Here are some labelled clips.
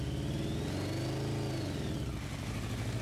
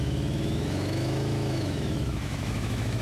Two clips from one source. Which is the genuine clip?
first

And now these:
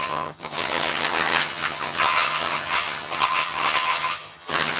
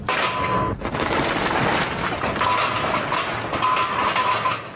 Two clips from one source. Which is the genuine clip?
second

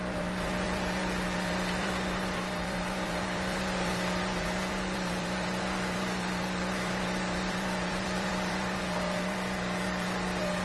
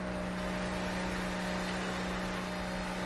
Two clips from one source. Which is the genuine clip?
second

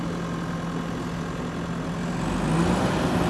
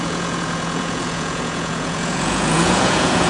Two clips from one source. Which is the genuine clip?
first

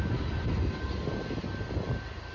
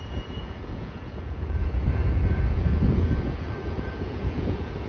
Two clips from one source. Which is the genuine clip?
first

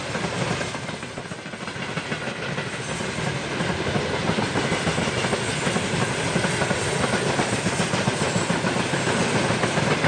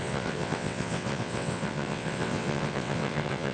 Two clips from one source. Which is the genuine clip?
first